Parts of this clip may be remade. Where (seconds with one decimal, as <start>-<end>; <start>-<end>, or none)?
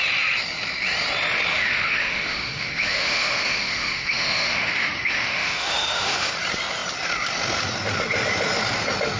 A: 1.5-6.3